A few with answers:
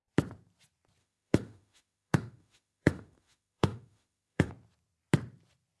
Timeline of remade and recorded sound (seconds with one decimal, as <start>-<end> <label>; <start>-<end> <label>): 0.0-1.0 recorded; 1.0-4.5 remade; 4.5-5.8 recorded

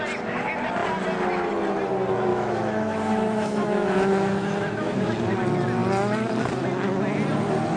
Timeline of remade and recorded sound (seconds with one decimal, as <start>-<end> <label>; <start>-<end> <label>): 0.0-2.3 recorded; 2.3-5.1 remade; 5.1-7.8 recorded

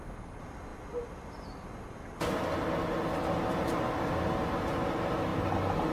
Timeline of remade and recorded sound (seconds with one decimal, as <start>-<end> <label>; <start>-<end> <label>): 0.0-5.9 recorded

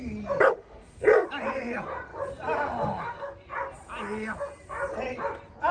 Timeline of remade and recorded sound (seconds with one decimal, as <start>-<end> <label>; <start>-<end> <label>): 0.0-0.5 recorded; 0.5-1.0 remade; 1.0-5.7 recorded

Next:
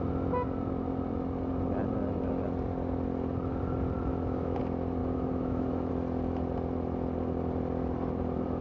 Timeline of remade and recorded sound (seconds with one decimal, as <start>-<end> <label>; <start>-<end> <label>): 0.0-4.1 recorded; 4.1-4.6 remade; 4.6-5.0 recorded; 5.0-5.9 remade; 5.9-8.6 recorded

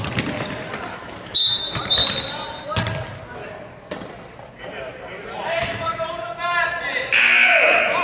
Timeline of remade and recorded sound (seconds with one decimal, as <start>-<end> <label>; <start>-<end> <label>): 0.0-0.9 recorded; 0.9-1.6 remade; 1.6-8.0 recorded